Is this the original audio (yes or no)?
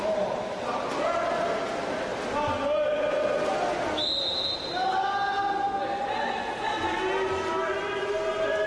yes